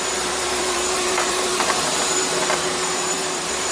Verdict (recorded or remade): remade